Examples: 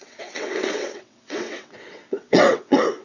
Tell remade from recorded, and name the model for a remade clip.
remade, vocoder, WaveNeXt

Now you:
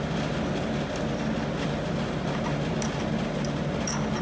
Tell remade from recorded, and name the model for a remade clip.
recorded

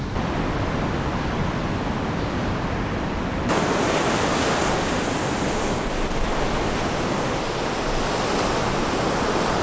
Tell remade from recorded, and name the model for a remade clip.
recorded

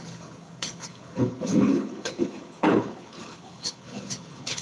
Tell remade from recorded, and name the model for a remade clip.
remade, codec, HILCodec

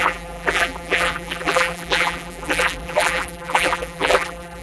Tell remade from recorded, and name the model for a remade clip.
remade, vocoder, BigVGAN v2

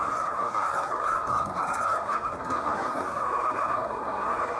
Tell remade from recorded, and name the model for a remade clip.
remade, codec, SNAC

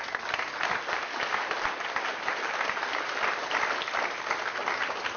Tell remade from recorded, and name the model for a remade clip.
recorded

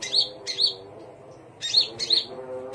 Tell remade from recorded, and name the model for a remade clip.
recorded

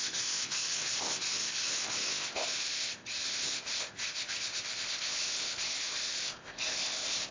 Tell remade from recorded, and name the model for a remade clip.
remade, codec, ZipCodec